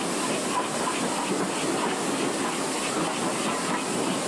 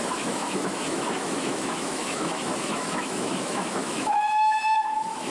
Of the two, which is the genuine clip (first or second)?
first